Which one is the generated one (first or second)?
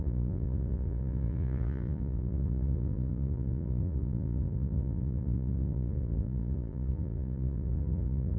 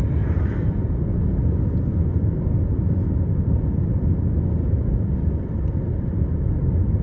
first